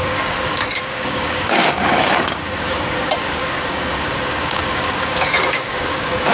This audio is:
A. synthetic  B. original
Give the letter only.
A